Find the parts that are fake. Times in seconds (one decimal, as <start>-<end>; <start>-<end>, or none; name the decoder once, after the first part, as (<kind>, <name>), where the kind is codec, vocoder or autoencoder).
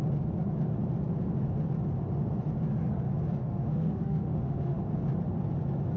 3.4-4.8 (autoencoder, DAC-VAE)